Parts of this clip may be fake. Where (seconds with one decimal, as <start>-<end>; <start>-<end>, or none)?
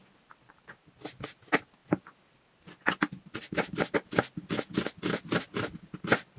none